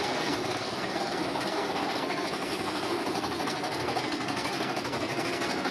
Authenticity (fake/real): fake